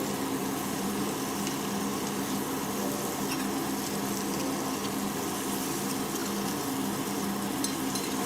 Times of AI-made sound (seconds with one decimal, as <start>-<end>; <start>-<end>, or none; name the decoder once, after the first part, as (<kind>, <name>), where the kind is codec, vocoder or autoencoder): 0.4-1.0 (vocoder, Vocos)